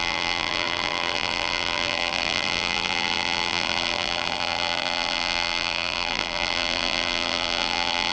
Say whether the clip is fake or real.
fake